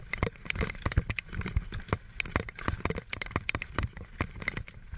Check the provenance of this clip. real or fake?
real